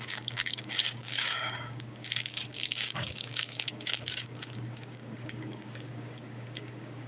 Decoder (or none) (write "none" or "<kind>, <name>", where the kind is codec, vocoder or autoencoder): codec, DAC